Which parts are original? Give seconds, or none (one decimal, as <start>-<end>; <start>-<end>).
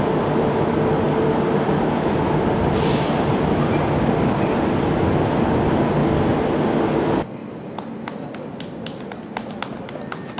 0.0-10.4